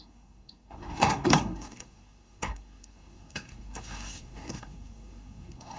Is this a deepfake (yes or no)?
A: yes